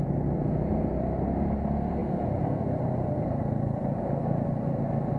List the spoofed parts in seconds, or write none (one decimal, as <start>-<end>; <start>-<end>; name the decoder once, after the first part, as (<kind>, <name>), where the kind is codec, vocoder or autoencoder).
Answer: 2.0-2.6 (vocoder, BigVGAN v2)